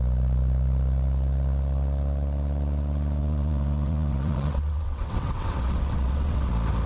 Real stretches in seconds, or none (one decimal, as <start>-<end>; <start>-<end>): 0.0-3.2; 6.5-6.9